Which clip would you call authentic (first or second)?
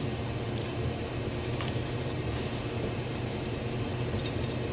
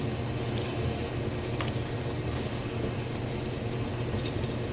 second